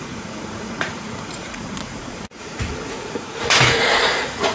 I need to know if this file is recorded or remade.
remade